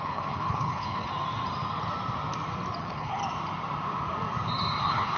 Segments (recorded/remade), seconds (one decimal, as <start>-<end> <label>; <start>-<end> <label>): 0.0-1.1 remade; 1.1-2.8 recorded; 2.8-3.2 remade; 3.2-4.8 recorded; 4.8-5.2 remade